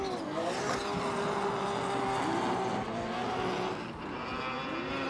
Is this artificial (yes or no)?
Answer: no